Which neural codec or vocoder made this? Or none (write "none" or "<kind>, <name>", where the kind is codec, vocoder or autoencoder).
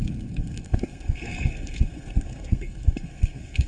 codec, SNAC